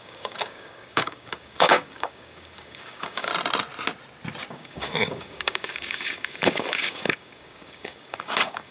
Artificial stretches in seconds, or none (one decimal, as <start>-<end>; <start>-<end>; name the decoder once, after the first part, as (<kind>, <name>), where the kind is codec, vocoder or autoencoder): 0.0-3.3 (codec, DAC); 4.5-8.7